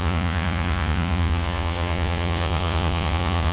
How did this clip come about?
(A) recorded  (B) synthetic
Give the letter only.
B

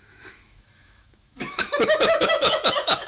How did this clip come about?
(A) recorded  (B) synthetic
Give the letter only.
B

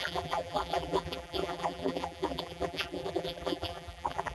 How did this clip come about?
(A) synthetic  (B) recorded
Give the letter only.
A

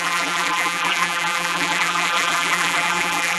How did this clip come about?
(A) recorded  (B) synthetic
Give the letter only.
B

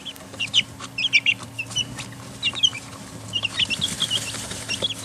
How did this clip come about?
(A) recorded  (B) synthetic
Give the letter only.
A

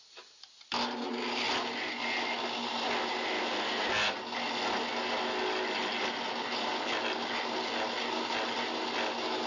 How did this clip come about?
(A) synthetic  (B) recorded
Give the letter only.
B